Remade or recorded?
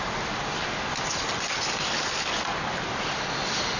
recorded